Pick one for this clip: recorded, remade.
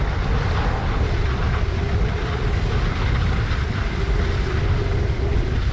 recorded